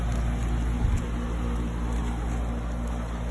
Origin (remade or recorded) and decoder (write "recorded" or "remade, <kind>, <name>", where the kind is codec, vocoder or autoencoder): recorded